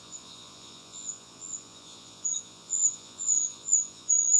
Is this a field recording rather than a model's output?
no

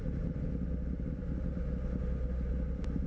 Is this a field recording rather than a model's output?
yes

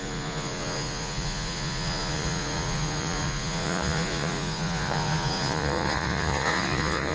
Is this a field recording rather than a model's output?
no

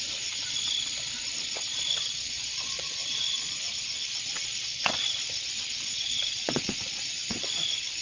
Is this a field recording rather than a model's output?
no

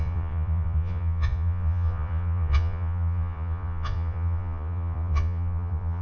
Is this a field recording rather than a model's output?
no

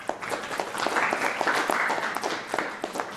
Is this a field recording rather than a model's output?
yes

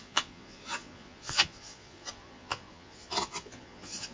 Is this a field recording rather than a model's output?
no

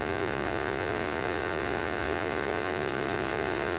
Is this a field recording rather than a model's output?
no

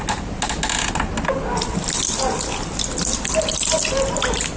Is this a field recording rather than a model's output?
yes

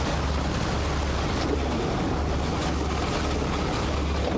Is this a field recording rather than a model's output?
yes